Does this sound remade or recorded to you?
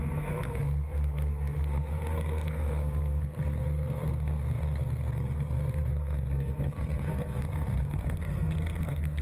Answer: remade